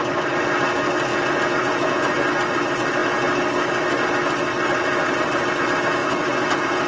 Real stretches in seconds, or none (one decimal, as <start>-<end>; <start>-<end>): 0.0-1.1; 2.1-6.0